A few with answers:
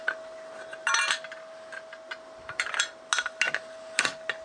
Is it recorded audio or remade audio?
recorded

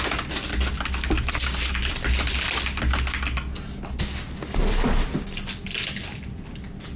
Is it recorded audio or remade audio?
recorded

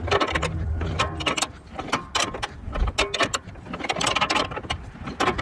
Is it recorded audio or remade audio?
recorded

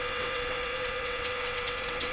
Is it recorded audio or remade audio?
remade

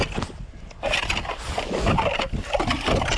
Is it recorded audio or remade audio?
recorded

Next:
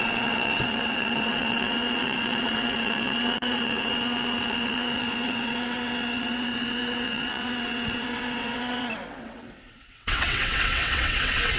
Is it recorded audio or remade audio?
remade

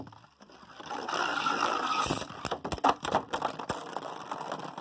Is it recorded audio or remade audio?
recorded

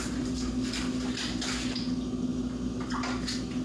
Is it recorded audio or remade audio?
recorded